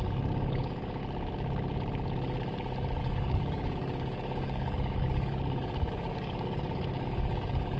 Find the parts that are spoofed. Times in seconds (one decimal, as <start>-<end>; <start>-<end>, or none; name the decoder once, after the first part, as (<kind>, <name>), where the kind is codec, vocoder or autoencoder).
0.0-1.0 (codec, DAC); 3.0-7.8

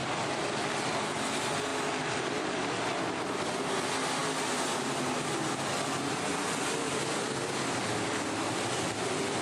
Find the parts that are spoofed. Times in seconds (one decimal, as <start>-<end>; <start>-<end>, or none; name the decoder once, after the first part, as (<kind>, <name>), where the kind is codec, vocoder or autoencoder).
none

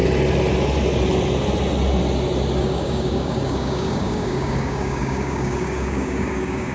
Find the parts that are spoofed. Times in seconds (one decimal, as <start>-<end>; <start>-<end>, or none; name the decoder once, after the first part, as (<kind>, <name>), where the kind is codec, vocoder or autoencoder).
2.6-6.7 (codec, DAC)